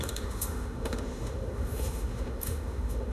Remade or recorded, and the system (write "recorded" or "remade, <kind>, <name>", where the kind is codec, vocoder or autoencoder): remade, autoencoder, DAC-VAE